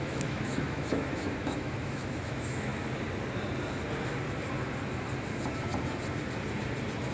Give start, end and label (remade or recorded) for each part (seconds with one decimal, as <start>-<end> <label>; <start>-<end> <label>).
0.0-2.7 remade; 2.7-7.1 recorded